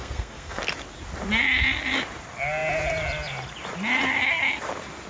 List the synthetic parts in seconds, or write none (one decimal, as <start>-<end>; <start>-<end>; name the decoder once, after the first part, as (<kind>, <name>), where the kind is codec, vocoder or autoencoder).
0.0-0.6 (codec, SNAC)